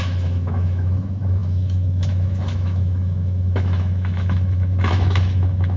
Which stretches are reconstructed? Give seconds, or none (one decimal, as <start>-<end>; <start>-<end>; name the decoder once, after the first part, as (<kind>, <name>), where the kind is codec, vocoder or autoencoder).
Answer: 0.0-5.8 (autoencoder, DAC-VAE)